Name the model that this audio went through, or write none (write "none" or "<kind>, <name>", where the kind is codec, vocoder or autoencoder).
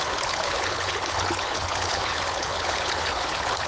codec, HILCodec